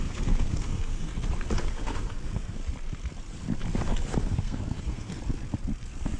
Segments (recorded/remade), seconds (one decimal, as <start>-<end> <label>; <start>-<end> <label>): 0.0-1.1 remade; 1.1-1.6 recorded; 1.6-2.6 remade; 2.6-4.2 recorded; 4.2-5.1 remade; 5.1-6.2 recorded